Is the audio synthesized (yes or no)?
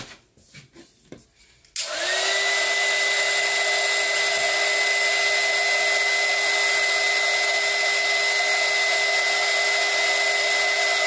no